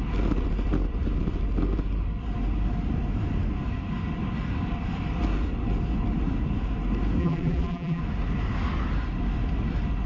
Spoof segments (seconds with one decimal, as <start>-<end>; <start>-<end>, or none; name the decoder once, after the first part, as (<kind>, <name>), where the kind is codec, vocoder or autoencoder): 7.2-8.0 (vocoder, BigVGAN v2)